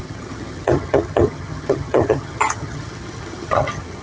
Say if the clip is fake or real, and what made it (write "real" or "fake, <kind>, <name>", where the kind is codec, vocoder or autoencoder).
fake, vocoder, HiFi-GAN